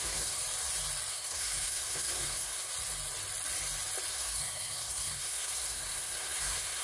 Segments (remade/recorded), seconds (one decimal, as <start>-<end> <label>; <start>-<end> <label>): 0.0-0.4 remade; 0.4-1.1 recorded; 1.1-2.7 remade; 2.7-4.1 recorded; 4.1-6.8 remade

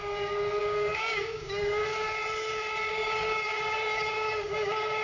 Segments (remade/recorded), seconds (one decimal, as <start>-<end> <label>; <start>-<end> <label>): 0.0-0.6 recorded; 0.6-1.8 remade; 1.8-2.9 recorded; 2.9-5.0 remade

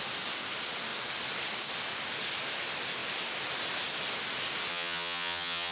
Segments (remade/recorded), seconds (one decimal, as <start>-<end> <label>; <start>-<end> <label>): 0.0-4.7 recorded; 4.7-5.7 remade

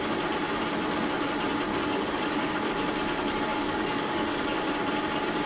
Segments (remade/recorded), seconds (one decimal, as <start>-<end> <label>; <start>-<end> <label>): 0.0-1.7 recorded; 1.7-2.7 remade; 2.7-3.5 recorded; 3.5-4.7 remade; 4.7-5.5 recorded